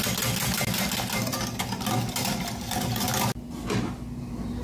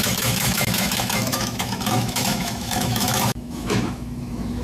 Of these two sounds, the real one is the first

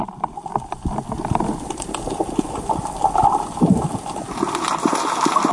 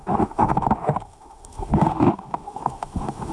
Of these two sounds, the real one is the first